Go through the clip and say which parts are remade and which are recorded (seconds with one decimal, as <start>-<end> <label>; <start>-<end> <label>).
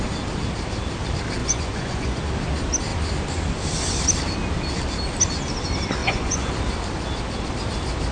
0.0-1.4 recorded; 1.4-2.2 remade; 2.2-6.0 recorded; 6.0-6.5 remade; 6.5-8.1 recorded